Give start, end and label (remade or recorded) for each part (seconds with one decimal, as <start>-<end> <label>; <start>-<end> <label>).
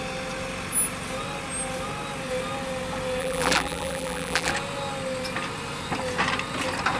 0.0-3.2 recorded; 3.2-4.5 remade; 4.5-7.0 recorded